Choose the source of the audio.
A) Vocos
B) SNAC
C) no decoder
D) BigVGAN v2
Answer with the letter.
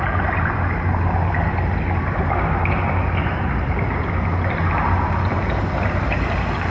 C